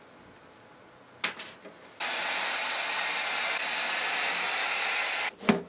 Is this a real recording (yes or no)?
yes